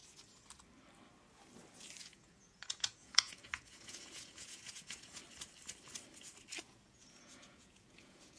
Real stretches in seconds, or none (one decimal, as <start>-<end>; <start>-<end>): 0.0-2.0; 5.2-6.6

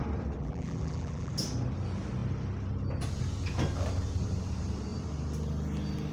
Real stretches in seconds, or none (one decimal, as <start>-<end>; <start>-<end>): 0.0-0.4; 1.3-6.1

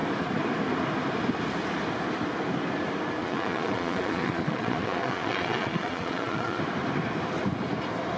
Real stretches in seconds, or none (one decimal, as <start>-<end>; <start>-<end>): 0.0-3.2; 6.6-8.2

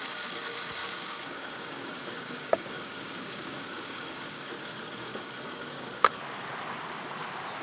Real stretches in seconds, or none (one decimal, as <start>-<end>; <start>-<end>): 0.0-0.8; 4.5-5.1; 6.2-7.6

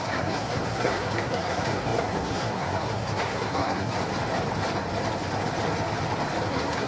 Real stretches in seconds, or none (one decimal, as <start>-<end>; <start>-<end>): 4.0-6.5

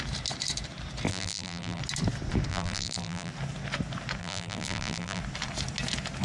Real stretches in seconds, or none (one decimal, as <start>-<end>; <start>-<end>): 0.0-1.1; 1.8-2.5; 3.3-4.2; 5.2-6.2